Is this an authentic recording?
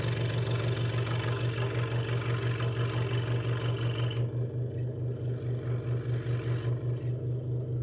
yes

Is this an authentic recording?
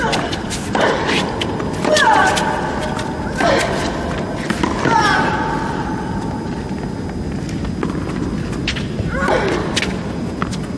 yes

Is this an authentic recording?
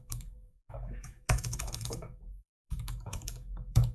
no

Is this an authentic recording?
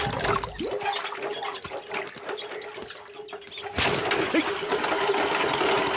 yes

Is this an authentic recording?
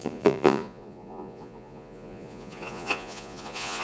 no